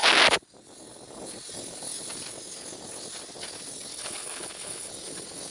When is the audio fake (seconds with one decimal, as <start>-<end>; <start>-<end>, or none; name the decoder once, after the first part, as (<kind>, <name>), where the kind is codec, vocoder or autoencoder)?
3.9-4.9 (codec, HILCodec)